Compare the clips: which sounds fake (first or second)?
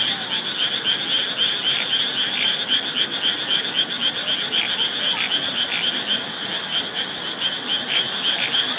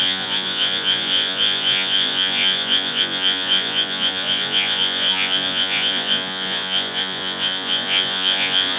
second